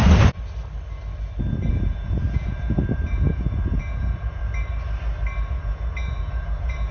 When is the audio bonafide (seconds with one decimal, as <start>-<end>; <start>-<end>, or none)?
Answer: 0.0-1.7; 4.4-5.5